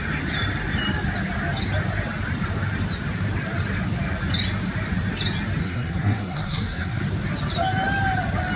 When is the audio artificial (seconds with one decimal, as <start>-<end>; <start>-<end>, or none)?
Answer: 5.6-7.0